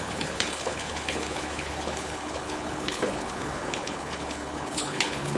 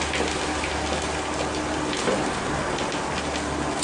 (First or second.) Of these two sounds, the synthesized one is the first